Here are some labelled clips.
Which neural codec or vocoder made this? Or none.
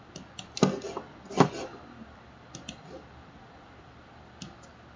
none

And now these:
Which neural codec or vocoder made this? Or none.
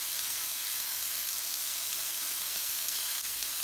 codec, SNAC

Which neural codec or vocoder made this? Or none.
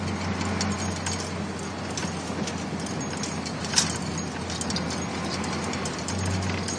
none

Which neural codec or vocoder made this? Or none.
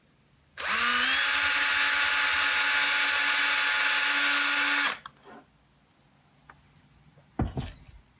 none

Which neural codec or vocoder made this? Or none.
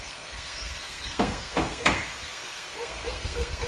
codec, SNAC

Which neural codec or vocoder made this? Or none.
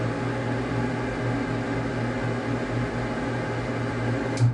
none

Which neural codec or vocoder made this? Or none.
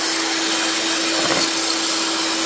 none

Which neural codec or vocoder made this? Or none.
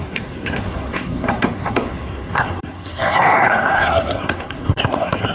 codec, SNAC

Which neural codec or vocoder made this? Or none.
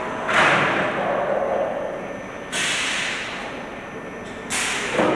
none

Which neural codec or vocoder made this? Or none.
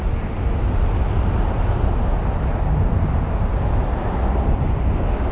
none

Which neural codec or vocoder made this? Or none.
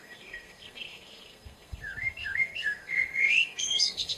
codec, SNAC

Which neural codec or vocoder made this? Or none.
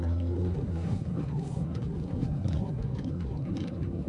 codec, SNAC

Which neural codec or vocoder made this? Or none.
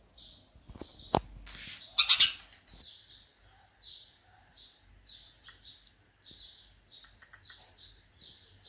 none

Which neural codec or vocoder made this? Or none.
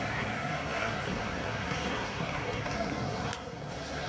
codec, SNAC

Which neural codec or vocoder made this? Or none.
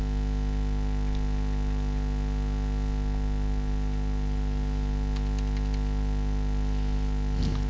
none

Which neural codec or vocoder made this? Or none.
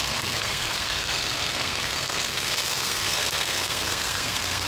codec, SNAC